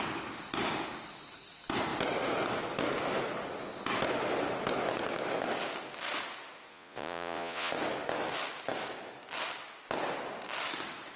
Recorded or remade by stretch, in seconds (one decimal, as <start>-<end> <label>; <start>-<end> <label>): 0.0-6.7 recorded; 6.7-7.7 remade; 7.7-11.2 recorded